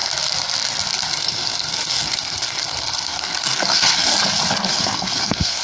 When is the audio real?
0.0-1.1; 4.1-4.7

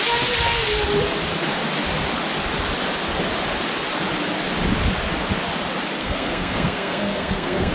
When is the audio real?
0.0-6.0

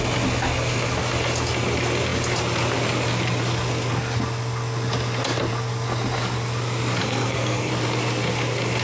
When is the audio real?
0.0-7.0; 7.7-8.8

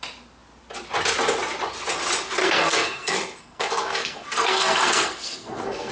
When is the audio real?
0.0-2.4

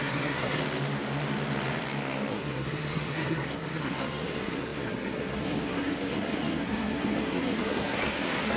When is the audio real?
0.6-2.3

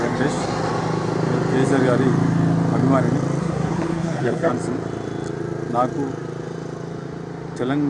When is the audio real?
0.0-3.4; 4.5-7.9

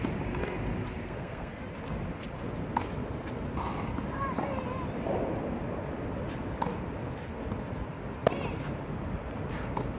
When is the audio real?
0.0-1.0; 1.6-10.0